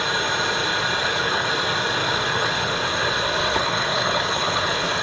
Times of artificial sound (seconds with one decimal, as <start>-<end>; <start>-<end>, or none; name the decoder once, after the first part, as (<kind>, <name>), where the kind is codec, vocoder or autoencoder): 1.0-1.5 (codec, HILCodec); 2.0-2.8; 3.5-5.0